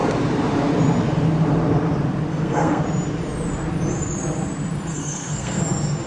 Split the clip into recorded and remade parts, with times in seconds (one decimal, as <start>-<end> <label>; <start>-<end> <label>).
0.0-2.3 recorded; 2.3-2.8 remade; 2.8-4.9 recorded; 4.9-5.6 remade; 5.6-6.1 recorded